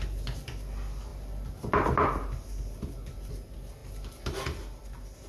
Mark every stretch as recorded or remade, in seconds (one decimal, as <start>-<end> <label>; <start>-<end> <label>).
0.0-5.3 recorded